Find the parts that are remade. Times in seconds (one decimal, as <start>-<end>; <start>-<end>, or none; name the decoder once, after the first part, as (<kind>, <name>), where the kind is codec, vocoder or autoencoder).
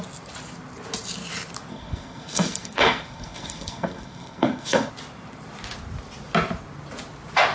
1.7-4.9 (codec, SNAC)